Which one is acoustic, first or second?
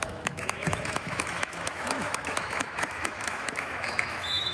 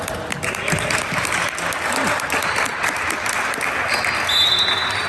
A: second